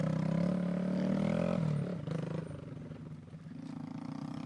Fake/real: real